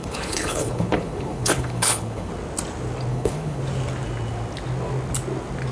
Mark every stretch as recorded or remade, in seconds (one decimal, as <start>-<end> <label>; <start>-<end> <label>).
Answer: 0.0-2.3 remade; 2.3-3.1 recorded; 3.1-3.6 remade; 3.6-5.7 recorded